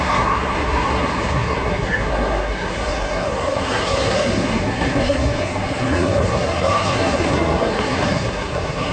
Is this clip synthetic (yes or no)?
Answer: yes